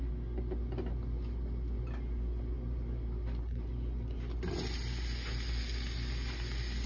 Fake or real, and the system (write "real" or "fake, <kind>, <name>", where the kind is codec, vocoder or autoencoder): real